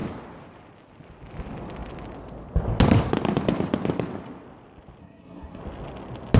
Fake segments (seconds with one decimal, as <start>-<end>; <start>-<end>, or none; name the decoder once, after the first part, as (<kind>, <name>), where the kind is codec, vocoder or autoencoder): 5.0-5.6 (codec, SNAC)